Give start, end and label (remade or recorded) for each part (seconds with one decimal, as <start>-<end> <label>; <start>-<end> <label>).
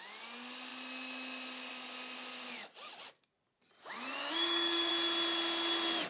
0.0-4.2 recorded; 4.2-4.9 remade; 4.9-6.1 recorded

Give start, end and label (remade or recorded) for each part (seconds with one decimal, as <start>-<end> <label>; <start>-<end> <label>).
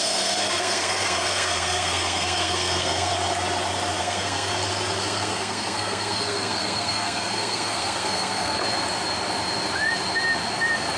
0.0-3.1 remade; 3.1-4.0 recorded; 4.0-4.5 remade; 4.5-5.0 recorded; 5.0-8.6 remade; 8.6-11.0 recorded